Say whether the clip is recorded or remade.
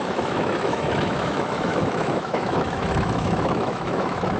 remade